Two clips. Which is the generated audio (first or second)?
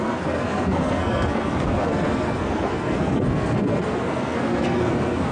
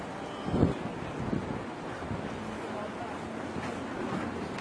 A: first